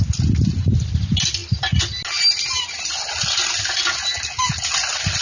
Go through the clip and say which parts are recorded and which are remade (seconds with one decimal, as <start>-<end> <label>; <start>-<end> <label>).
0.0-5.2 recorded